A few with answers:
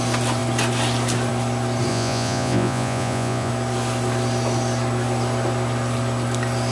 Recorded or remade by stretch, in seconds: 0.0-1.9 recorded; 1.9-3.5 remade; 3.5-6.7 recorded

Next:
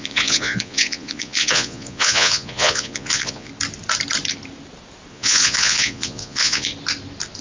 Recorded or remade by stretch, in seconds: 0.0-3.5 remade; 3.5-5.1 recorded; 5.1-6.7 remade; 6.7-7.4 recorded